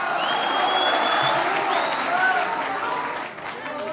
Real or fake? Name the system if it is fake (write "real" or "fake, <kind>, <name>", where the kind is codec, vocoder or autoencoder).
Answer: real